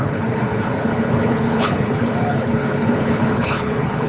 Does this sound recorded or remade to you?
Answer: remade